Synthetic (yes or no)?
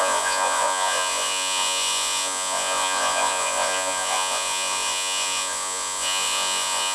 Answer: yes